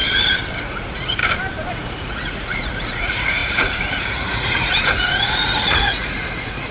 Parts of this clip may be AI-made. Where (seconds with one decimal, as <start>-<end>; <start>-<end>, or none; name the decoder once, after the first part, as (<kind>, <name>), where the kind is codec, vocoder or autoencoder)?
0.6-1.2 (vocoder, Vocos); 1.7-6.7